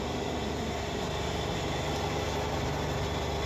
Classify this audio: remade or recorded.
recorded